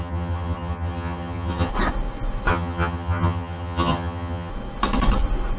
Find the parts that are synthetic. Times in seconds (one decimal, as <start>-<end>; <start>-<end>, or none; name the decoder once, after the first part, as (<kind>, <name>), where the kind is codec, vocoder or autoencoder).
0.0-1.7 (vocoder, HiFi-GAN); 2.5-4.5